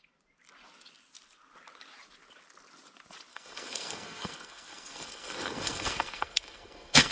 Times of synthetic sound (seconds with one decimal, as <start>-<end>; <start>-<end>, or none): 3.3-7.1